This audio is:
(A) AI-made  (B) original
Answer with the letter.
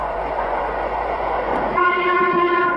A